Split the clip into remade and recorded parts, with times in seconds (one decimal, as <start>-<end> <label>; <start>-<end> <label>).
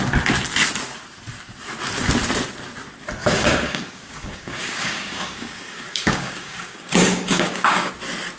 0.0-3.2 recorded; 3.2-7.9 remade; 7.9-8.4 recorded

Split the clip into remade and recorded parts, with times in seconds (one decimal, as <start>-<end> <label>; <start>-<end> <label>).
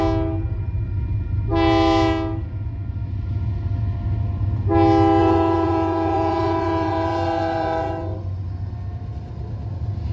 0.0-5.2 recorded; 5.2-8.7 remade; 8.7-10.1 recorded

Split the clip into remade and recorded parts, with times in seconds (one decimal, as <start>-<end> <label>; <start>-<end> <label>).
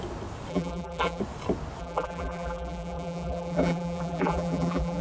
0.0-0.5 recorded; 0.5-1.2 remade; 1.2-1.8 recorded; 1.8-5.0 remade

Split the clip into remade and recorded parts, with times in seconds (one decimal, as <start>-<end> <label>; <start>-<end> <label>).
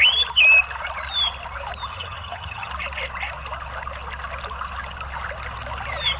0.0-1.9 recorded; 1.9-2.7 remade; 2.7-6.2 recorded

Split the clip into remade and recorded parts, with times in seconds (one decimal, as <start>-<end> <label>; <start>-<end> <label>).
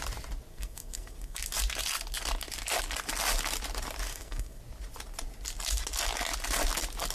0.0-0.5 recorded; 0.5-1.4 remade; 1.4-4.1 recorded; 4.1-4.6 remade; 4.6-7.1 recorded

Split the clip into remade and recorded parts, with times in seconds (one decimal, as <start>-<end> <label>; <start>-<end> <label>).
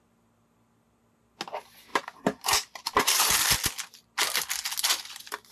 0.0-1.9 recorded; 1.9-3.5 remade; 3.5-5.5 recorded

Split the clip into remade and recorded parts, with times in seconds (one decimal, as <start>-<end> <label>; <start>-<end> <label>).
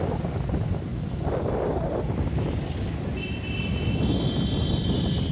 0.0-5.3 recorded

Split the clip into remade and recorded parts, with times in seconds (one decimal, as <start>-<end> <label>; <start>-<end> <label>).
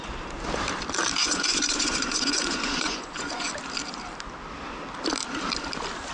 0.0-1.2 recorded; 1.2-3.5 remade; 3.5-6.1 recorded